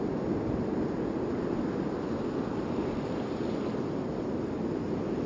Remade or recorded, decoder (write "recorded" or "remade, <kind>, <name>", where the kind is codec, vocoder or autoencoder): recorded